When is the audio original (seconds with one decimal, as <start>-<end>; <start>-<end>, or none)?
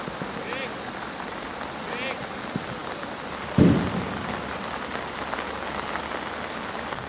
0.0-7.1